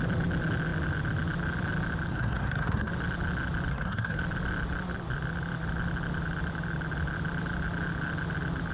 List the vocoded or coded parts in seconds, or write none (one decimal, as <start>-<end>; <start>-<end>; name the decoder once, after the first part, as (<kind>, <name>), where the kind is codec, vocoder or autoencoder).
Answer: 2.1-2.9 (codec, SNAC); 3.7-4.2